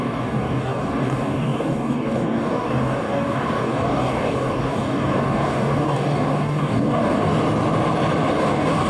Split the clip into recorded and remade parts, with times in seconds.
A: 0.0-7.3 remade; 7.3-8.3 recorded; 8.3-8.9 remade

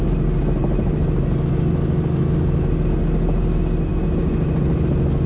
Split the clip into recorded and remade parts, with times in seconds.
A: 0.0-0.6 recorded; 0.6-1.6 remade; 1.6-5.3 recorded

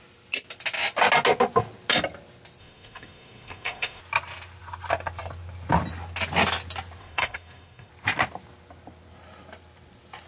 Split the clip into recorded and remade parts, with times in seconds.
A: 0.0-2.6 recorded; 2.6-4.0 remade; 4.0-7.0 recorded; 7.0-7.9 remade; 7.9-10.3 recorded